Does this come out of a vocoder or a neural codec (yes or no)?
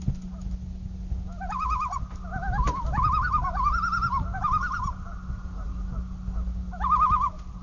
no